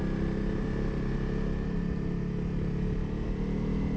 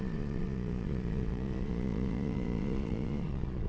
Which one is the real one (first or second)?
first